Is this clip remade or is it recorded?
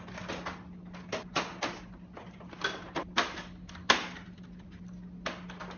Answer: recorded